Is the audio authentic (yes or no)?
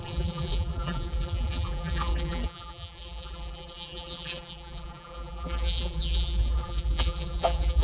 no